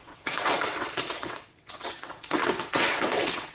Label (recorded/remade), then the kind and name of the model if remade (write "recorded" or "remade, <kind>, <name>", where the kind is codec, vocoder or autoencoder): remade, vocoder, WaveNeXt